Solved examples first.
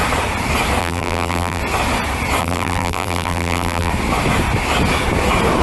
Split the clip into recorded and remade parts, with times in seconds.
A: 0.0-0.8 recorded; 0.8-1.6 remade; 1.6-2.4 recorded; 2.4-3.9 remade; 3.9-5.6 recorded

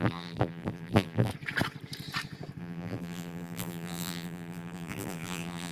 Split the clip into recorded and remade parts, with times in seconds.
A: 0.0-1.3 remade; 1.3-2.6 recorded; 2.6-5.7 remade

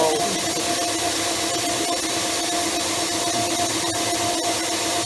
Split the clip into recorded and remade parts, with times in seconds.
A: 0.0-5.1 recorded

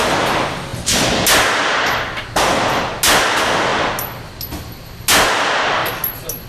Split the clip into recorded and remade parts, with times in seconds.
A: 0.0-6.5 recorded